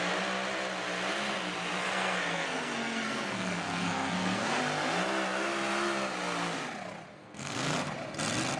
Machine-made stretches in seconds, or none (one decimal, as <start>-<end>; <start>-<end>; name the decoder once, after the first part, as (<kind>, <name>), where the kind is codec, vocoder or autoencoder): 1.8-4.6 (codec, SNAC); 7.1-7.8